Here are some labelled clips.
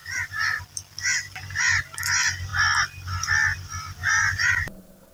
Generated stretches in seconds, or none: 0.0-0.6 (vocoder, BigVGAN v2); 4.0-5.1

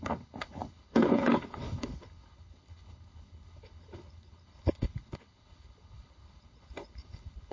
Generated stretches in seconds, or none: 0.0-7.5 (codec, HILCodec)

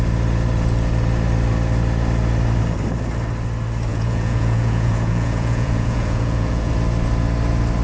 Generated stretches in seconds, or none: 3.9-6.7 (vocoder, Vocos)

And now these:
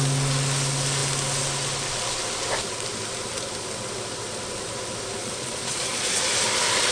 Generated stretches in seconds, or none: 5.2-6.2 (vocoder, Vocos)